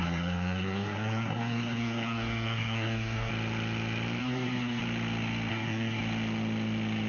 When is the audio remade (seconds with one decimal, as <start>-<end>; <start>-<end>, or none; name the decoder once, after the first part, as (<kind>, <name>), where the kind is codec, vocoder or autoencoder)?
0.0-3.3 (codec, SNAC); 4.2-4.8; 5.5-6.0